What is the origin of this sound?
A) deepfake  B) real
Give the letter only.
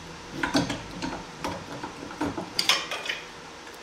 A